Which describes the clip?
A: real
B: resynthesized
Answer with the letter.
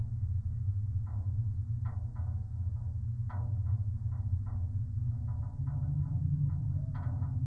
A